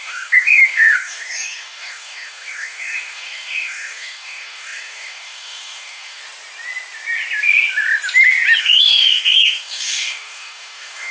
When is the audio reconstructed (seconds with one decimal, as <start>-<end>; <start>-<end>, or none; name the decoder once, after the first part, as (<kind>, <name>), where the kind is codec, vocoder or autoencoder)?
0.0-6.2 (codec, DAC); 8.6-11.1

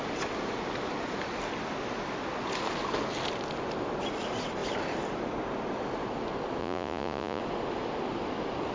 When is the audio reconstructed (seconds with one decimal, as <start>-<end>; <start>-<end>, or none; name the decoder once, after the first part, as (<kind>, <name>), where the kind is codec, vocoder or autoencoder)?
6.6-7.4 (vocoder, Vocos)

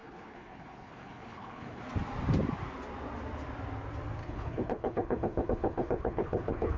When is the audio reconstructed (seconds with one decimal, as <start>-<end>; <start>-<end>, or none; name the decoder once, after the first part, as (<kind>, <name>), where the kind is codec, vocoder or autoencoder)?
0.0-1.8 (codec, HILCodec); 4.2-6.8

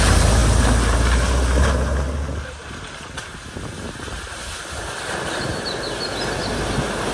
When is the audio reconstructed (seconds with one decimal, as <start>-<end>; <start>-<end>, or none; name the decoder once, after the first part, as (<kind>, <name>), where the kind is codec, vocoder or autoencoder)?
none

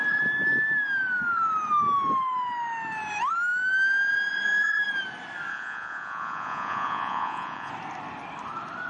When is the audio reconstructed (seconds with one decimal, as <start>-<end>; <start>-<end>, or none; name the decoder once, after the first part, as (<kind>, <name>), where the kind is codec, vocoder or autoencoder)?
5.5-7.7 (vocoder, Vocos)